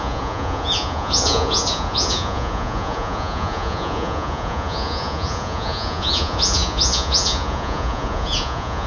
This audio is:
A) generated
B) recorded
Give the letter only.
A